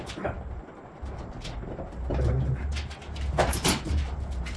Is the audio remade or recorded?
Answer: recorded